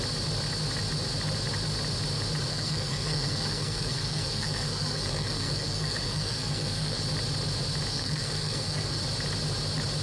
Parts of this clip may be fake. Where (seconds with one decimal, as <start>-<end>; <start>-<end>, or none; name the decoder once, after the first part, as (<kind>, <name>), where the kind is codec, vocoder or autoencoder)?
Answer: 2.5-7.0 (codec, SNAC); 7.9-9.0